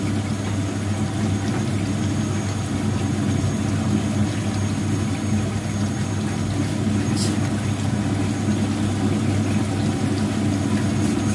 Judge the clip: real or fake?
real